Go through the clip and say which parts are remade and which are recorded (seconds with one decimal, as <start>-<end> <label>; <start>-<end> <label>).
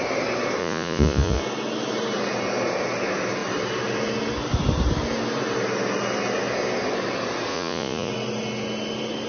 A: 0.0-0.6 recorded; 0.6-1.4 remade; 1.4-7.5 recorded; 7.5-8.1 remade; 8.1-9.3 recorded